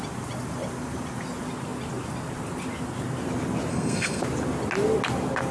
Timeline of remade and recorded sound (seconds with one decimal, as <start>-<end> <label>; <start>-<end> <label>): 0.0-3.7 recorded; 3.7-4.2 remade; 4.2-5.5 recorded